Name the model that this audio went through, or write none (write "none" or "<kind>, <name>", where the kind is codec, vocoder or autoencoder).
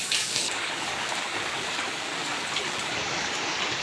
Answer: codec, DAC